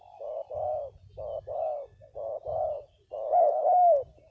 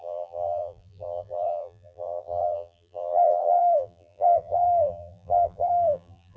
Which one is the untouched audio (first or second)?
first